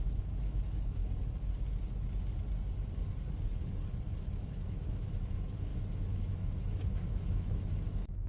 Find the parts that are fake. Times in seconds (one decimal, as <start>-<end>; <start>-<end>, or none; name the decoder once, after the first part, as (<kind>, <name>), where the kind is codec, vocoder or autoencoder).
0.0-1.0 (autoencoder, DAC-VAE); 4.2-8.3